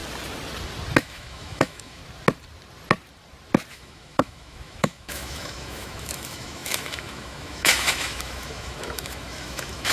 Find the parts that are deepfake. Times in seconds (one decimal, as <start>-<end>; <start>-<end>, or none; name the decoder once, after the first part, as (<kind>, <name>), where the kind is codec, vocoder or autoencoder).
1.0-2.0 (autoencoder, DAC-VAE); 3.7-9.9